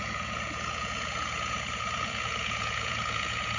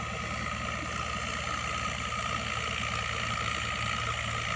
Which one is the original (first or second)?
second